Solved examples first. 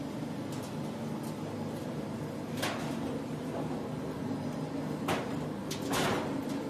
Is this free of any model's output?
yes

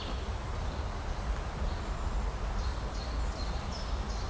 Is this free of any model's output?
yes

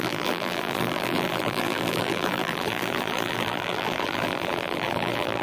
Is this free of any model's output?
no